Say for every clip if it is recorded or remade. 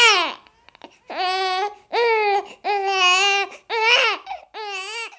recorded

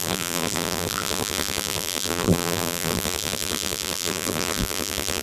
remade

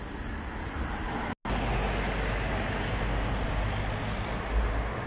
recorded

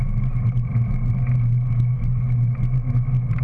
recorded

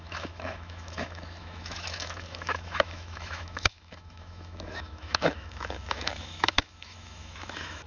remade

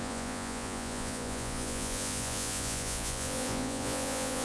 remade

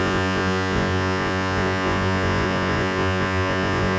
remade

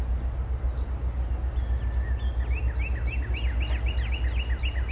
recorded